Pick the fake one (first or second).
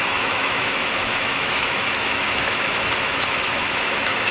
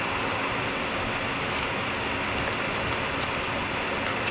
first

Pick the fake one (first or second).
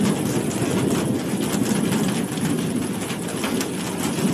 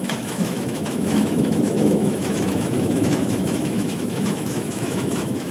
second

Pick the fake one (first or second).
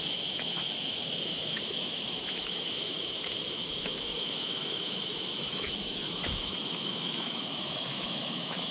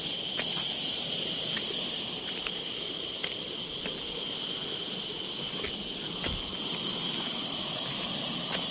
first